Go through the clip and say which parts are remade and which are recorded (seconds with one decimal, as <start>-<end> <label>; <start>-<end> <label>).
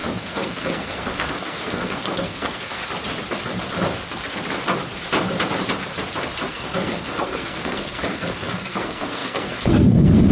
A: 0.0-2.8 remade; 2.8-6.5 recorded; 6.5-10.3 remade